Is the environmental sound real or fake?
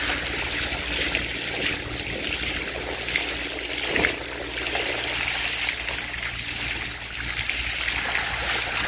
real